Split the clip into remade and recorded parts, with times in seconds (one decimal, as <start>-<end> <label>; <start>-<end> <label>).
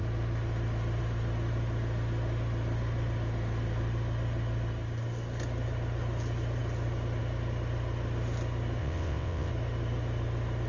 0.0-8.8 recorded; 8.8-9.5 remade; 9.5-10.7 recorded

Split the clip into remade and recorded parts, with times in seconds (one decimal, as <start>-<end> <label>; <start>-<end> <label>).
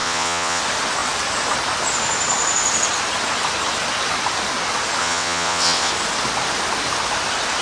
0.0-0.6 remade; 0.6-5.0 recorded; 5.0-5.9 remade; 5.9-7.6 recorded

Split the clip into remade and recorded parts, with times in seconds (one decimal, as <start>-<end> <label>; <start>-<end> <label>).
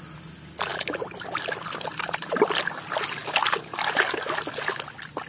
0.0-5.3 recorded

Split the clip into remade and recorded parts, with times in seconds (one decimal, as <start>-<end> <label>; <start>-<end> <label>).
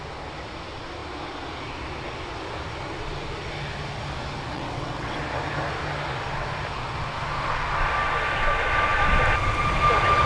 0.0-4.5 recorded; 4.5-5.2 remade; 5.2-10.3 recorded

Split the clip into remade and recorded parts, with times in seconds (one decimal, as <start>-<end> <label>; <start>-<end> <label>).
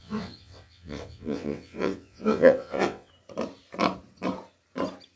0.0-3.1 remade; 3.1-5.2 recorded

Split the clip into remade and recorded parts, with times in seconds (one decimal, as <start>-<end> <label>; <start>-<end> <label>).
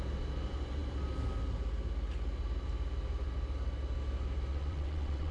0.0-4.5 recorded; 4.5-5.3 remade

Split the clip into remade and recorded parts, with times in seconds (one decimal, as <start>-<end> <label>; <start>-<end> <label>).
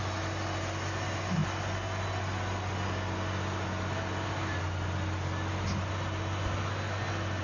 0.0-7.4 recorded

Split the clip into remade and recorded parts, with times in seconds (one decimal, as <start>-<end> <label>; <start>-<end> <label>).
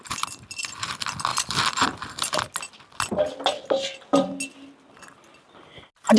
0.0-6.2 recorded